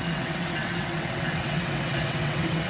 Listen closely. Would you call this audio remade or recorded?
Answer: remade